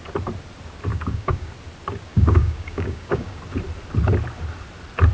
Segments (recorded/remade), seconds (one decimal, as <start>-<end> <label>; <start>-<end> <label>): 0.0-0.9 recorded; 0.9-1.5 remade; 1.5-2.1 recorded; 2.1-3.4 remade; 3.4-5.1 recorded